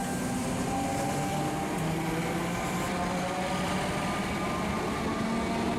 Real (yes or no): yes